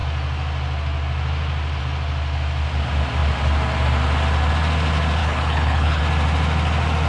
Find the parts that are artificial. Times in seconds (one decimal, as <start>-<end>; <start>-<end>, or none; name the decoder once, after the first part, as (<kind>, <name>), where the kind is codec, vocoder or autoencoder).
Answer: 5.2-6.0 (codec, HILCodec)